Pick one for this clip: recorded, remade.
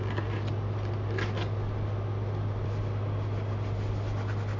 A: recorded